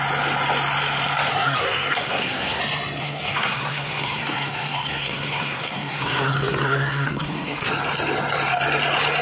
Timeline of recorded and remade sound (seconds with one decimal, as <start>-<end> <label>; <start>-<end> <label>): 0.0-1.3 recorded; 1.3-2.6 remade; 2.6-3.0 recorded; 3.0-7.7 remade; 7.7-9.2 recorded